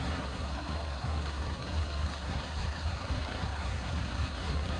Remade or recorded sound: remade